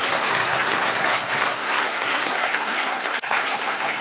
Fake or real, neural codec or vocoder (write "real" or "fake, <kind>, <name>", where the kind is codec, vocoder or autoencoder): fake, codec, SNAC